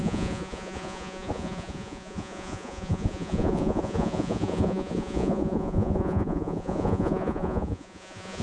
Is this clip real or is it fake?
fake